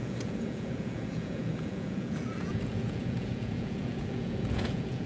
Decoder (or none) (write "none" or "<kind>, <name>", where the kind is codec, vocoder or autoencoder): vocoder, Vocos